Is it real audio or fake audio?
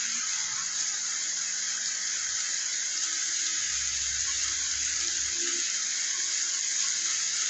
real